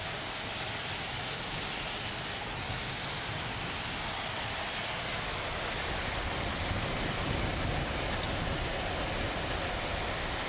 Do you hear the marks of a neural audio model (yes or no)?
no